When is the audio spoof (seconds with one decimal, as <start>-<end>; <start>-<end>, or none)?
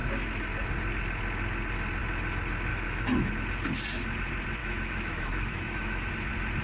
2.7-3.3; 4.6-6.1